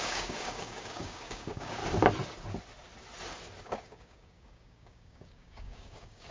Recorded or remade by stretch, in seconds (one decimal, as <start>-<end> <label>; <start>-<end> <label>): 0.0-1.8 remade; 1.8-3.6 recorded; 3.6-6.3 remade